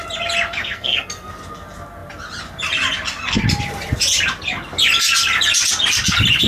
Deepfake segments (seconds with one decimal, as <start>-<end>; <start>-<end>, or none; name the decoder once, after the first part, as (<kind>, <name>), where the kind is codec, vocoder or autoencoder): 0.6-1.3 (codec, SNAC)